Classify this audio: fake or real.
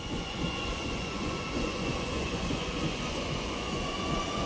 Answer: fake